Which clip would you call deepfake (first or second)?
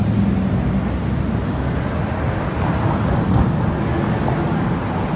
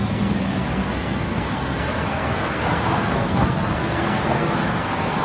second